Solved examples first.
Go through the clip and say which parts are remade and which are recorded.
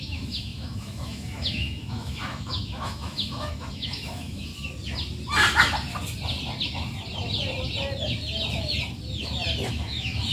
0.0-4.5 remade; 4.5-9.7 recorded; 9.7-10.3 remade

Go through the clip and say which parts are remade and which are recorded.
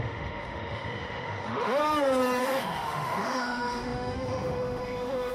0.0-1.8 remade; 1.8-2.4 recorded; 2.4-5.3 remade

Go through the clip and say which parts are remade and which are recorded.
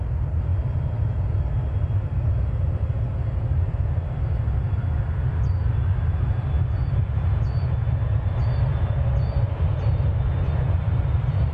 0.0-11.5 recorded